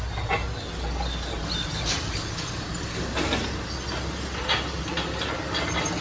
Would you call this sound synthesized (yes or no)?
no